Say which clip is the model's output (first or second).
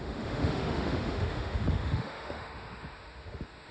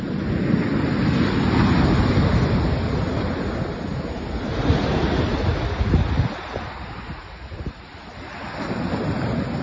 first